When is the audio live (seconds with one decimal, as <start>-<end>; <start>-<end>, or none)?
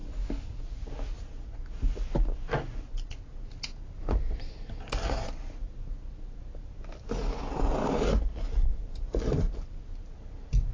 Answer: 0.6-10.7